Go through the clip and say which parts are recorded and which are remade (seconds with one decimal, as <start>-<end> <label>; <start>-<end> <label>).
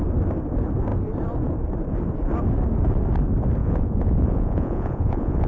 0.0-3.6 recorded; 3.6-5.5 remade